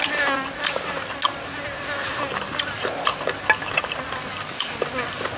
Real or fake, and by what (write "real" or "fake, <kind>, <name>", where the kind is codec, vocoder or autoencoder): real